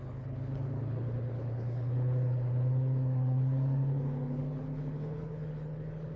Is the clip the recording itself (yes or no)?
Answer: no